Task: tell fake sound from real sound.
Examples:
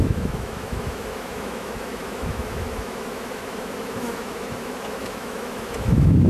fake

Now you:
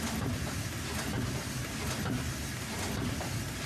real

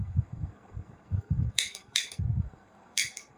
fake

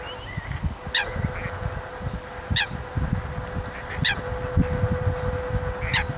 real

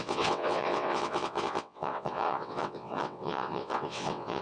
fake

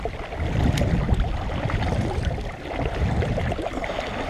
real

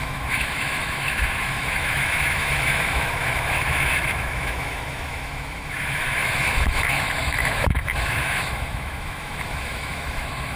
fake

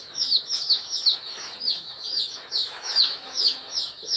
fake